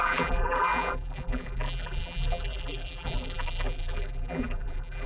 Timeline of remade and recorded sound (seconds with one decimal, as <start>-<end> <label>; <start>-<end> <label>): 0.0-5.1 remade